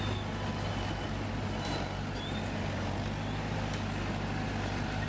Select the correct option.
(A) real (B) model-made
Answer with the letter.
A